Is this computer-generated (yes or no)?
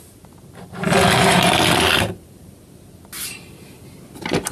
no